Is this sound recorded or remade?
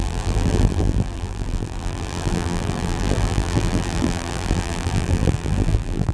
remade